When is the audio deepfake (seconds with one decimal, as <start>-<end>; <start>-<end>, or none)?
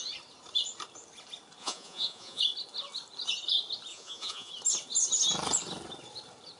1.6-2.4; 3.9-4.5